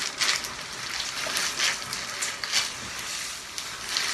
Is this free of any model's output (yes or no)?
yes